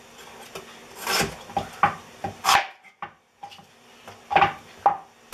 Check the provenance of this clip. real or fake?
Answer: real